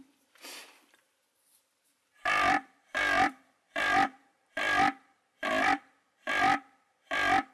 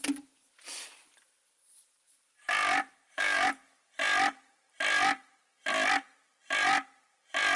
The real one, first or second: second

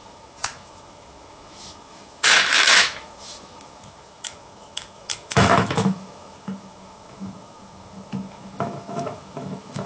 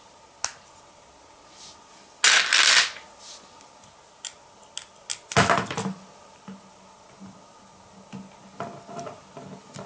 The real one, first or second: second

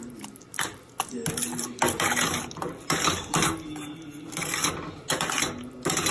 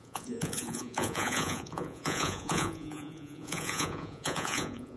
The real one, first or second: first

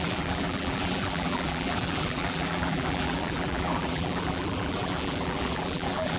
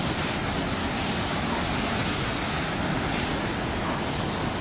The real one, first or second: second